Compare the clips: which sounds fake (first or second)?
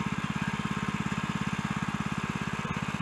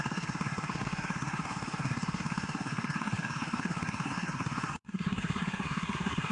second